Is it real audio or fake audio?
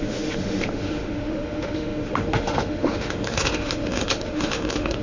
fake